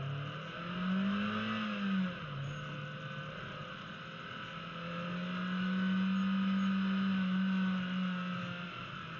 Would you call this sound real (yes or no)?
yes